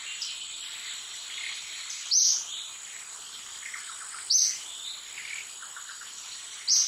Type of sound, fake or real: real